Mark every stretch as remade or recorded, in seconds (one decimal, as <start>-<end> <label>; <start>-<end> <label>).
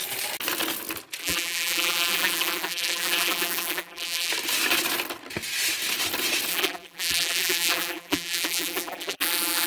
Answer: 0.0-1.2 recorded; 1.2-4.3 remade; 4.3-6.5 recorded; 6.5-9.7 remade